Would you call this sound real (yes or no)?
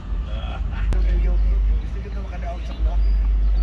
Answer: yes